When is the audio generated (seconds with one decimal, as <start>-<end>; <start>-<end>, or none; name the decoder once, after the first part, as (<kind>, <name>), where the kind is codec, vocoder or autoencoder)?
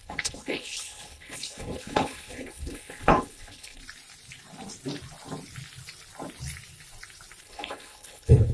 0.0-3.8 (codec, HILCodec); 7.4-8.5